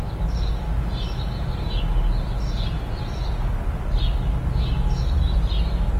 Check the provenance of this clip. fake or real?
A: real